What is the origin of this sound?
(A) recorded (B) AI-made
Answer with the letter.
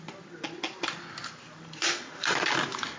A